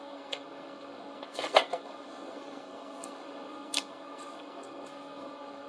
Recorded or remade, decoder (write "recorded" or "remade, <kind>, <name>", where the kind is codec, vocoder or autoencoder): remade, codec, SNAC